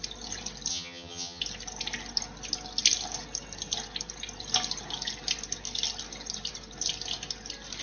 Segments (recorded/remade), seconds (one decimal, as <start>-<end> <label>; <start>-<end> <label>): 0.0-0.7 recorded; 0.7-1.4 remade; 1.4-7.8 recorded